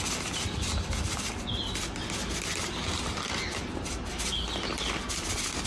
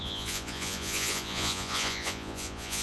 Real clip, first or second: first